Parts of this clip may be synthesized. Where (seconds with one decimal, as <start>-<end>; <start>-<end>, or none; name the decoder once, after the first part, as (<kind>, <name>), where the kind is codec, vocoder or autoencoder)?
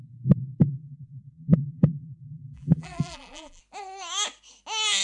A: 0.6-3.6 (vocoder, BigVGAN v2)